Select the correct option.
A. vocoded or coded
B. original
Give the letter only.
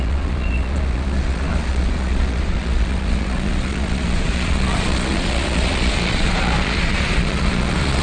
A